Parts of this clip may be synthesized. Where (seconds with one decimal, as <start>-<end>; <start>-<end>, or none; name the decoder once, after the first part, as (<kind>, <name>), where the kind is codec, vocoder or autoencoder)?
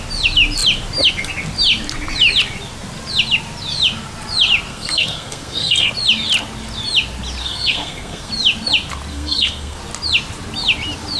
4.7-5.9 (codec, SNAC); 7.4-8.3; 9.1-9.8